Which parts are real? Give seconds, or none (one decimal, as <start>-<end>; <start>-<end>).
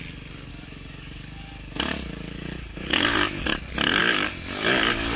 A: 0.0-0.5; 3.6-4.0